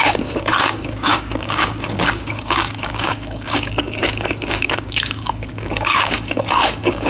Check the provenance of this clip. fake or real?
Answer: fake